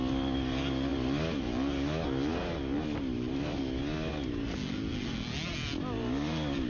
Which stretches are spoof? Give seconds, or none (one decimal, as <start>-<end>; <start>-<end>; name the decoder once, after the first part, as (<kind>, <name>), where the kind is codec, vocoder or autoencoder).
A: none